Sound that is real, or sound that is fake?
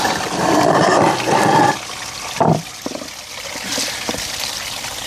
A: real